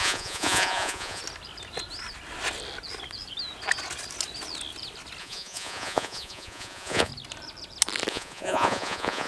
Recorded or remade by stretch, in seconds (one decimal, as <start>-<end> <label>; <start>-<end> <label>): 0.0-1.2 remade; 1.2-5.2 recorded; 5.2-7.1 remade; 7.1-8.1 recorded; 8.1-9.3 remade